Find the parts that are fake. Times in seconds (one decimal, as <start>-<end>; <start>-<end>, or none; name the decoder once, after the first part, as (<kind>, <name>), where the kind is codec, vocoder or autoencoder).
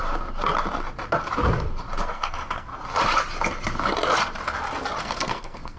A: 2.0-2.7 (codec, SNAC); 5.0-5.8